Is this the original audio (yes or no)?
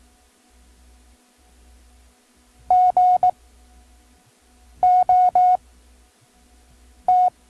yes